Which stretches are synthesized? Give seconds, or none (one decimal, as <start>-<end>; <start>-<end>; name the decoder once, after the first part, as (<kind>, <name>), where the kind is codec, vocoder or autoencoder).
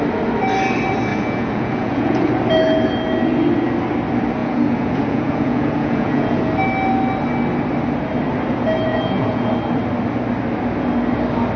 1.1-2.3 (vocoder, Vocos); 4.4-6.4; 8.9-9.5